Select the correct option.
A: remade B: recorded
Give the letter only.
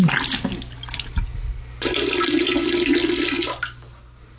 B